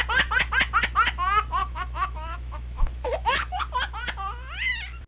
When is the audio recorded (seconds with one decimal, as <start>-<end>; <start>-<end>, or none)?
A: 0.0-1.6; 3.6-5.1